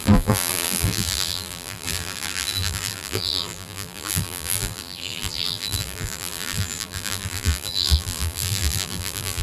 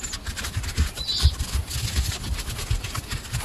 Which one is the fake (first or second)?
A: first